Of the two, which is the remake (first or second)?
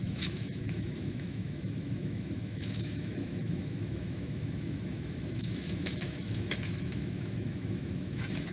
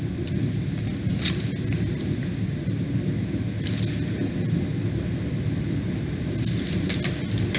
first